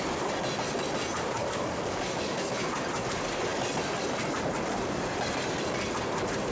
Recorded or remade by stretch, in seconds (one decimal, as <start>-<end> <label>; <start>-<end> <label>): 0.0-1.4 recorded; 1.4-2.5 remade; 2.5-6.5 recorded